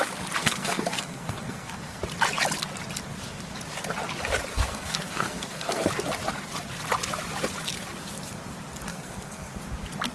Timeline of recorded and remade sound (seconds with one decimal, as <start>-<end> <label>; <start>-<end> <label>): 0.0-0.4 recorded; 0.4-2.0 remade; 2.0-4.5 recorded; 4.5-5.9 remade; 5.9-8.9 recorded; 8.9-9.6 remade; 9.6-10.1 recorded